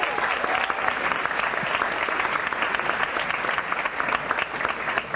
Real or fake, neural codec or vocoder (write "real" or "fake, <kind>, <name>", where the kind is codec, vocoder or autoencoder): real